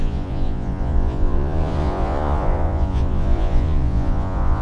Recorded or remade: remade